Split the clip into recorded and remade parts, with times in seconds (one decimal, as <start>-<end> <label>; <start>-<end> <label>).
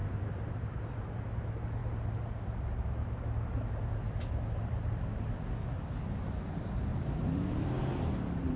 0.0-6.9 recorded; 6.9-8.0 remade; 8.0-8.6 recorded